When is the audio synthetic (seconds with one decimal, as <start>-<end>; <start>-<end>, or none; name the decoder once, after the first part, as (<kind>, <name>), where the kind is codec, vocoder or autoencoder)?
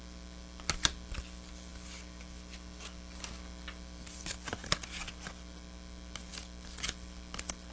none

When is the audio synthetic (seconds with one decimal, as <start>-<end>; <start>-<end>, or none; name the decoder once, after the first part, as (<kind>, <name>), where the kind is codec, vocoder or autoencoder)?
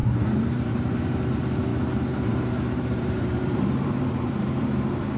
0.0-1.1 (vocoder, BigVGAN v2); 1.7-4.8